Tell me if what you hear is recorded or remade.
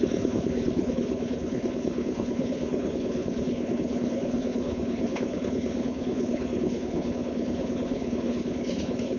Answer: remade